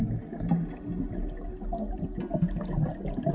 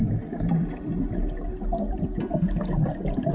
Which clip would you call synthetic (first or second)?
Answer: second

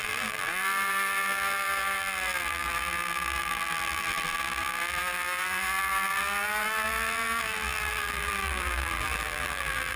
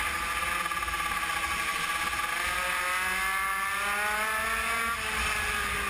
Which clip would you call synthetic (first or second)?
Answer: first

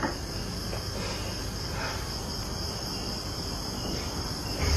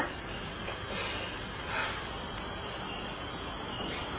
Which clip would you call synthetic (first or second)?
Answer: first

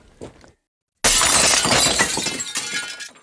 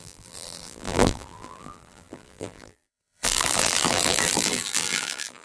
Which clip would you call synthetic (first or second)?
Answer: second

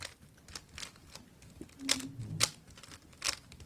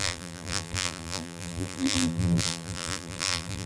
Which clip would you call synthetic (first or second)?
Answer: second